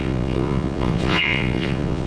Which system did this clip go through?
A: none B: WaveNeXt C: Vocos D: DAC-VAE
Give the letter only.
C